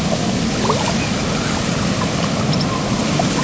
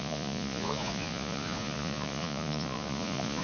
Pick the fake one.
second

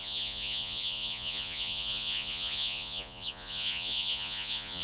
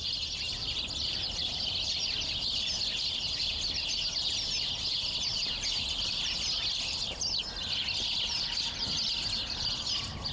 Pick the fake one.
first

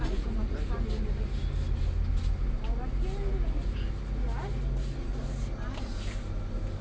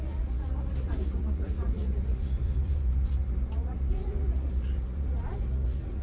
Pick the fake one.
second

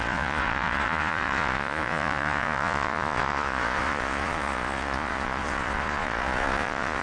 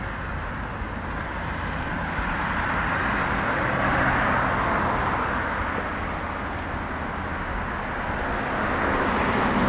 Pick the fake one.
first